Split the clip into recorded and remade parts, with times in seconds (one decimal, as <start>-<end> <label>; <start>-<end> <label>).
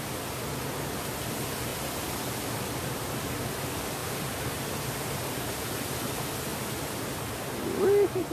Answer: 0.0-8.3 recorded